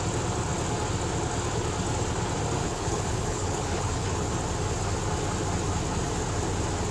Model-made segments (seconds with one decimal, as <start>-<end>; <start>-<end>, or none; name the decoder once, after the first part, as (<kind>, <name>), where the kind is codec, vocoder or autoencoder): 2.6-4.3 (codec, HILCodec)